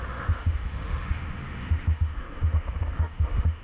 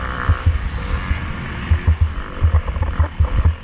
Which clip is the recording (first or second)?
second